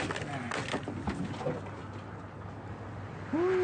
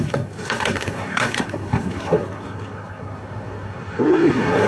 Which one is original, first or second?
first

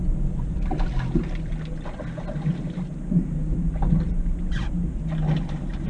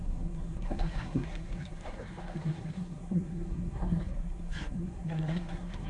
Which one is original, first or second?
first